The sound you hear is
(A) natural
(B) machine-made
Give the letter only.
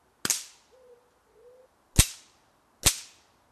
A